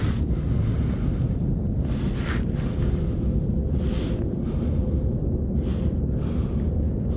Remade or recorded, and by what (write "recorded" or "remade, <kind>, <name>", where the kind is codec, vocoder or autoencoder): recorded